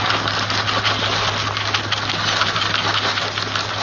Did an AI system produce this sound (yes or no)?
no